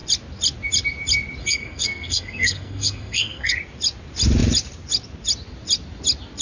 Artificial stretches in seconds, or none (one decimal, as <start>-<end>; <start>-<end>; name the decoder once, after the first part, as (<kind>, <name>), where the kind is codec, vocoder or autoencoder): 1.4-3.5 (codec, SNAC)